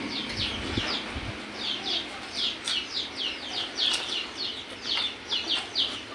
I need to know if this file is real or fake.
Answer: real